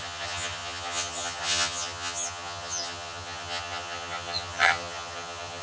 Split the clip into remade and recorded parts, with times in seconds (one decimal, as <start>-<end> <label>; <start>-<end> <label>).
0.0-5.6 remade